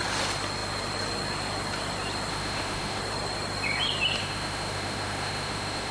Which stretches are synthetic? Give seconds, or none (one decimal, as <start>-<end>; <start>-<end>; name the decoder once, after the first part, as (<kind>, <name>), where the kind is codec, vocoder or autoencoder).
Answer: 2.3-3.0 (autoencoder, DAC-VAE); 4.2-5.9